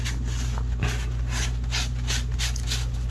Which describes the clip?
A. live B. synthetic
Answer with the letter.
A